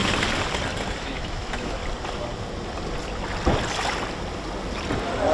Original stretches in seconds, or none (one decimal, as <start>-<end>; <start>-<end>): 0.0-1.0; 1.8-5.3